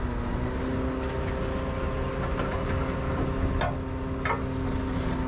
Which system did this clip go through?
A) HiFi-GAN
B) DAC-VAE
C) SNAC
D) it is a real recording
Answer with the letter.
D